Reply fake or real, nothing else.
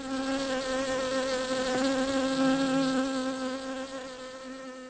real